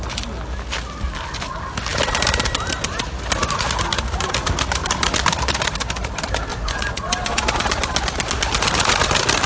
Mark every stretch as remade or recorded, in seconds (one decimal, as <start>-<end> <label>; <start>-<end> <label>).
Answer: 0.0-6.5 recorded; 6.5-7.4 remade; 7.4-9.5 recorded